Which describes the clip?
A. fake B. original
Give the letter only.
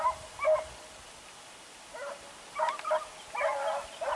B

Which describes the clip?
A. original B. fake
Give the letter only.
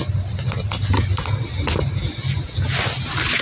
A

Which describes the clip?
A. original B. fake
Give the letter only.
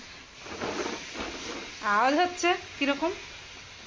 A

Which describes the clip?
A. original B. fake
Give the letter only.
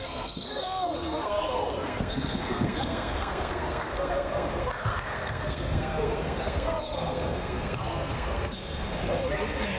B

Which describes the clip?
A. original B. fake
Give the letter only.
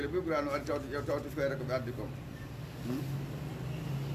A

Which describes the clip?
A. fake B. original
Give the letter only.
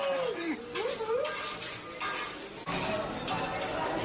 B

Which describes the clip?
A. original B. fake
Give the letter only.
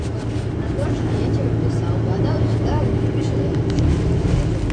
A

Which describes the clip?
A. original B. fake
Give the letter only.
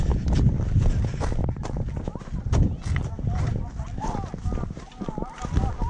A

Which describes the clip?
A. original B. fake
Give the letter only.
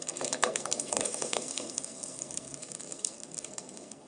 B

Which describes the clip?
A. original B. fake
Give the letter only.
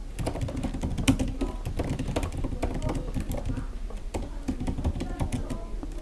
A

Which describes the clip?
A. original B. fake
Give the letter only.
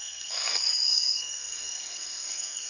B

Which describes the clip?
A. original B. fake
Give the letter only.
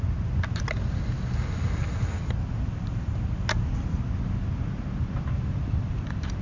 A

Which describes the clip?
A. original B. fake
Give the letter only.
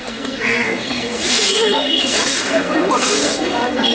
B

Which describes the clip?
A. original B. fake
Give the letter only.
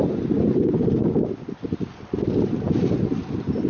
A